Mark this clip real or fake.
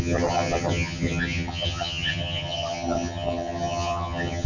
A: fake